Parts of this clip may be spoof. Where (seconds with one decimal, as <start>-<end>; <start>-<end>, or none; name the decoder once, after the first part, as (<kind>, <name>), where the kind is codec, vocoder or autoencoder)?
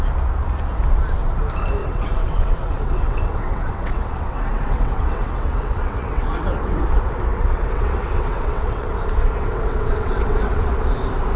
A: 1.8-6.8 (vocoder, WaveNeXt); 7.3-8.9; 9.4-10.7